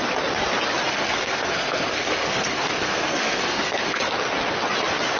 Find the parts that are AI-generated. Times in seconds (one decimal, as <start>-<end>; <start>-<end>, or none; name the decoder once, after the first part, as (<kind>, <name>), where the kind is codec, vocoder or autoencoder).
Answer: 0.9-4.0 (codec, SNAC)